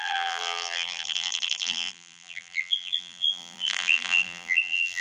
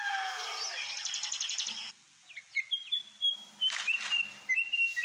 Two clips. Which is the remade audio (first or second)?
first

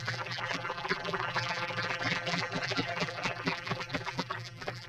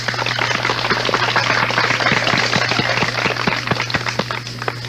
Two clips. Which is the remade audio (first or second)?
first